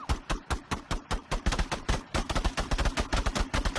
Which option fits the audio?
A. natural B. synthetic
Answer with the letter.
A